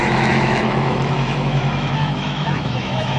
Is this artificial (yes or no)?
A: yes